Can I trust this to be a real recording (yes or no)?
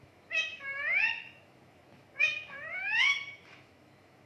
no